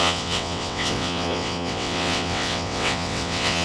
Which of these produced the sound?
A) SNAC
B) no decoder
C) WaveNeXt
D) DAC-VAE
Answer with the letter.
C